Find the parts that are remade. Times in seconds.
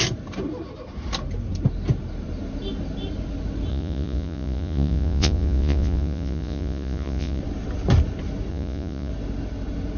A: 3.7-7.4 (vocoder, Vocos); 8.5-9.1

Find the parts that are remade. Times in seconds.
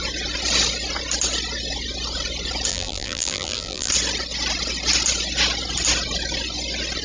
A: 2.7-3.9 (vocoder, BigVGAN v2)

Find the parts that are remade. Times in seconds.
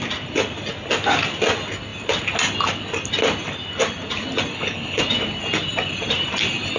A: 4.5-5.0 (codec, HILCodec)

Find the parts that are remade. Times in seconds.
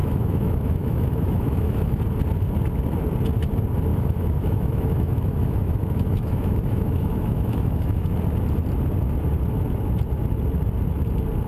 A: 0.0-2.0 (autoencoder, DAC-VAE); 3.9-8.1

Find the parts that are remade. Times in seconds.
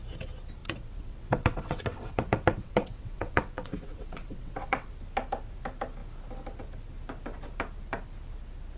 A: 0.6-4.9 (vocoder, WaveNeXt)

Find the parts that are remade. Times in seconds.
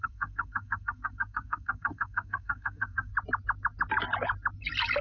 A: 0.0-3.1 (codec, SNAC)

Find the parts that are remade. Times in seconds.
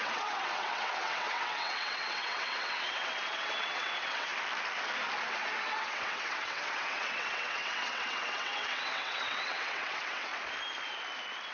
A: 0.0-4.3 (vocoder, WaveNeXt); 5.2-10.3